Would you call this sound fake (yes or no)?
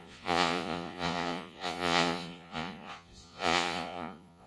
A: yes